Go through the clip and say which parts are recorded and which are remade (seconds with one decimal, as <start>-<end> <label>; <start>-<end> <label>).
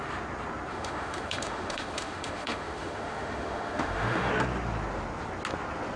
0.0-0.7 recorded; 0.7-4.3 remade; 4.3-6.0 recorded